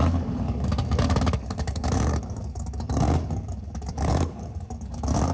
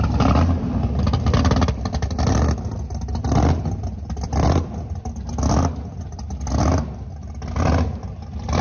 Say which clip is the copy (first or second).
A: first